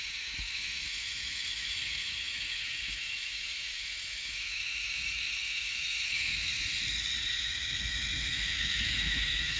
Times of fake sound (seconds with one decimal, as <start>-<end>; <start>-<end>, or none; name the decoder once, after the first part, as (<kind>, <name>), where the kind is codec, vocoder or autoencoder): 0.0-6.5 (autoencoder, DAC-VAE); 7.3-9.6